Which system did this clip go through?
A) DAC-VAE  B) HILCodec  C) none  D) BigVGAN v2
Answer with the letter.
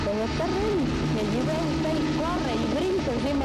C